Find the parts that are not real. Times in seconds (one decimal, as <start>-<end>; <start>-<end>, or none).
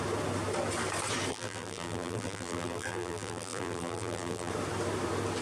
1.3-4.5